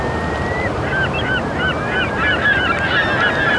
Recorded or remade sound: remade